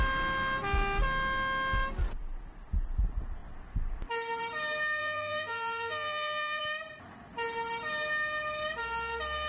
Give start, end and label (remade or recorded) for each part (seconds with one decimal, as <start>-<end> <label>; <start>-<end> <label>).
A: 0.0-5.0 recorded; 5.0-6.6 remade; 6.6-9.5 recorded